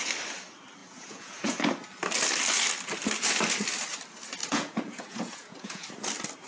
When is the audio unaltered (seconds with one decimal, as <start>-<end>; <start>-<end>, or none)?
0.0-0.8; 1.7-4.4; 5.9-6.5